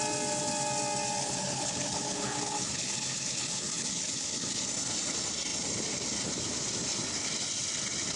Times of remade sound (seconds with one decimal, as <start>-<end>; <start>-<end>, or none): 1.2-4.7